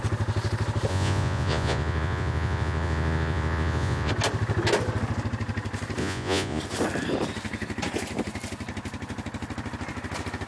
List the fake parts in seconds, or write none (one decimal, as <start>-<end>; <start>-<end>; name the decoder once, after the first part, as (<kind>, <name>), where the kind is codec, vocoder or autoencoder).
0.9-4.1 (vocoder, Vocos); 6.0-6.6

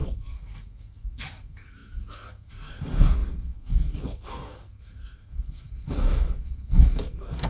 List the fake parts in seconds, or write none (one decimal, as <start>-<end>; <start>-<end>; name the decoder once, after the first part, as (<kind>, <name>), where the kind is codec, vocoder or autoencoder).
0.0-7.5 (codec, SNAC)

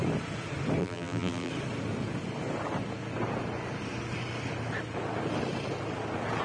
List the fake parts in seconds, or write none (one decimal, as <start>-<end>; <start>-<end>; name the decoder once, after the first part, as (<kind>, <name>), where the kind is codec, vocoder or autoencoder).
0.8-1.5 (vocoder, BigVGAN v2)

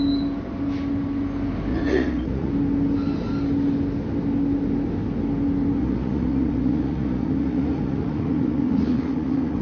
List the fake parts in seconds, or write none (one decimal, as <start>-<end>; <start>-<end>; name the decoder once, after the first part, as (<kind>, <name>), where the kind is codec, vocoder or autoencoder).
1.7-2.5 (vocoder, Vocos); 5.8-9.6

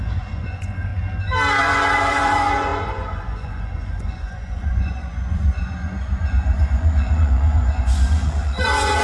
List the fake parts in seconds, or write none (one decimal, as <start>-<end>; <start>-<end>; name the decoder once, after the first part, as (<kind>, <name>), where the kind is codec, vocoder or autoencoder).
0.0-0.9 (vocoder, Vocos); 1.6-9.0

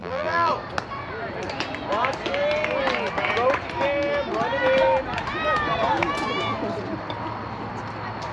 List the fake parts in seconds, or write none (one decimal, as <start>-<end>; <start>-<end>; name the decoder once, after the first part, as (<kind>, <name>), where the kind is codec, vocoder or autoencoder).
0.0-0.5 (vocoder, BigVGAN v2)

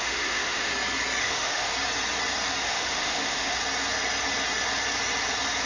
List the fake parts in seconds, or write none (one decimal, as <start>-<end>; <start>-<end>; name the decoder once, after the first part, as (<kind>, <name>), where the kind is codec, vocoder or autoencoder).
0.0-0.7 (autoencoder, DAC-VAE); 1.2-1.7; 2.6-3.6